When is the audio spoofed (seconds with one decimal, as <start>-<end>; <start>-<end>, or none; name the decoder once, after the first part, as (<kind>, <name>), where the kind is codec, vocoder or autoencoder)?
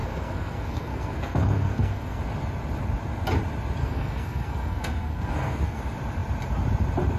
0.0-2.2 (codec, SNAC); 3.8-5.8